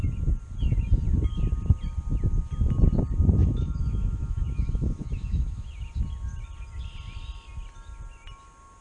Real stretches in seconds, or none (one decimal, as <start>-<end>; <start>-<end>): 0.0-3.4; 5.7-8.8